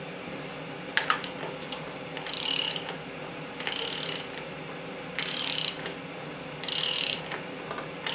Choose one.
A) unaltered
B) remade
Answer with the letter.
A